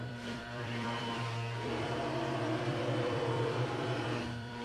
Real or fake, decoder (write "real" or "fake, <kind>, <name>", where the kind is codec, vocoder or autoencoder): fake, vocoder, BigVGAN v2